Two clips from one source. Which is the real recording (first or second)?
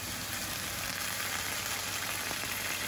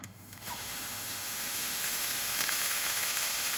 first